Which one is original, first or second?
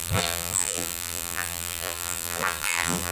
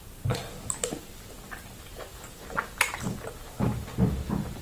second